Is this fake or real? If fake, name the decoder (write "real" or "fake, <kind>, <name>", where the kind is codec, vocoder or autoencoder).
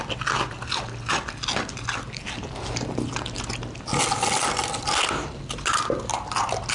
real